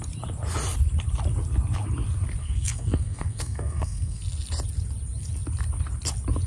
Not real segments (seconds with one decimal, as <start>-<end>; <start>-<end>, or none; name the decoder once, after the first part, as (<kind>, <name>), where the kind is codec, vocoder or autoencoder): 2.4-4.2 (codec, SNAC)